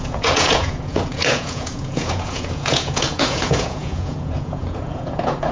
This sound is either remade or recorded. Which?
remade